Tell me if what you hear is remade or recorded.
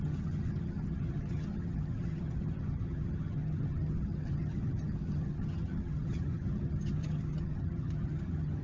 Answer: remade